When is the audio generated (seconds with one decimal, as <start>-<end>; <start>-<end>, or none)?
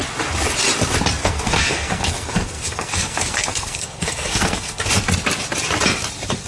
1.2-4.9